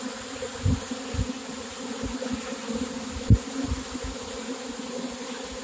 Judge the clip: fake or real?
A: real